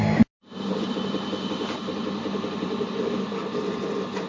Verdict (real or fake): real